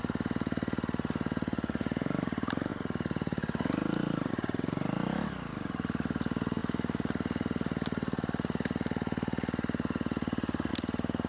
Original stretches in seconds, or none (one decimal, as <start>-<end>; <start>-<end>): 0.0-11.3

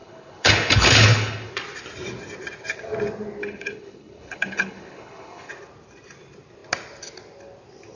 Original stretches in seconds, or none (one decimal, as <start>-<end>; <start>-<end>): 1.5-3.4; 5.5-8.0

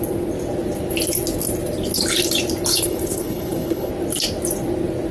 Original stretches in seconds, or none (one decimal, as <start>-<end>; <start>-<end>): 0.0-2.7; 3.9-5.1

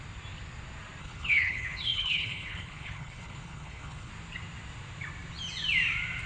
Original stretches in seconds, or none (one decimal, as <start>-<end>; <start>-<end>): 0.0-1.0; 4.1-6.3